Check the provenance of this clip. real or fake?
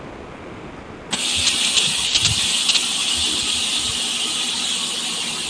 real